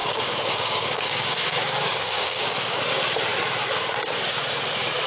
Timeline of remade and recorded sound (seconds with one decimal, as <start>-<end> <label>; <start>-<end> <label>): 0.0-2.8 remade; 2.8-5.1 recorded